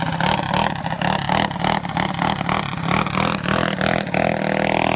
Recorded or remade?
recorded